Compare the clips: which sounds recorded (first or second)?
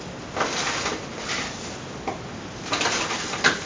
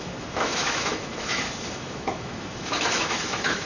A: first